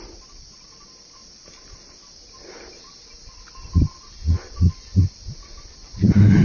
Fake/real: real